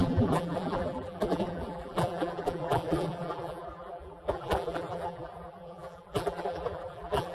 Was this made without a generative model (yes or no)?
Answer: no